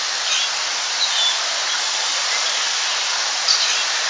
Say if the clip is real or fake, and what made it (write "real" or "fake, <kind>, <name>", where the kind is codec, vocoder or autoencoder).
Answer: real